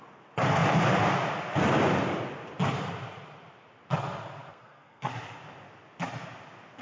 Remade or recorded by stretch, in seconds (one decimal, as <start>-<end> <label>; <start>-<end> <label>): 0.0-4.5 recorded; 4.5-5.1 remade; 5.1-6.8 recorded